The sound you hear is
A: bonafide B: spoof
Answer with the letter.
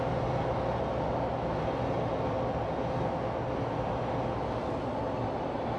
A